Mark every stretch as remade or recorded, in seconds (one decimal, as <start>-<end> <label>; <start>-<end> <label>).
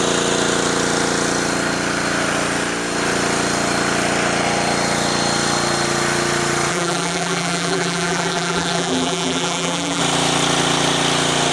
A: 0.0-6.7 recorded; 6.7-10.0 remade; 10.0-11.5 recorded